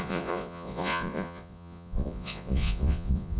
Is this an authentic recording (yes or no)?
no